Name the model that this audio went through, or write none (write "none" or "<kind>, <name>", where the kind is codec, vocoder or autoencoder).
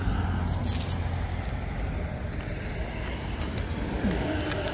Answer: none